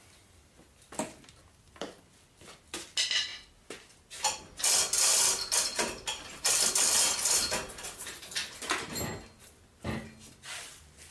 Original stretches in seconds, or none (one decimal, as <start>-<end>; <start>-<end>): 0.0-11.1